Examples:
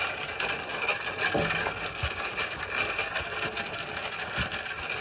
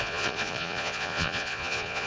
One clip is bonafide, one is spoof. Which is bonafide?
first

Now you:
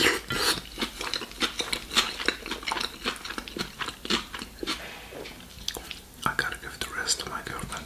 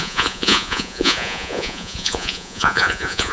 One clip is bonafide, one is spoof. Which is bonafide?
first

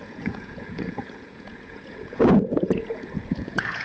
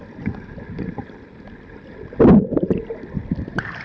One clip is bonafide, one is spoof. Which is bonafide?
second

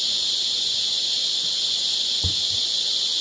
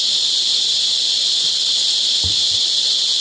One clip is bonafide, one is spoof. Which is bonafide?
second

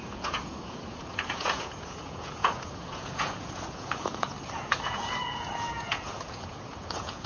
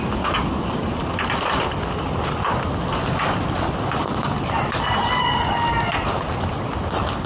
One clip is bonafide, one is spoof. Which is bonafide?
second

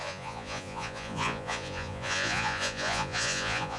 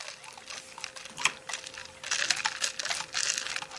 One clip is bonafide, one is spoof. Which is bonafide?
second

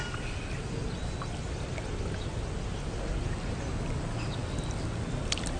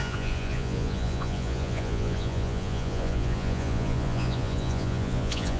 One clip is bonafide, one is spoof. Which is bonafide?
first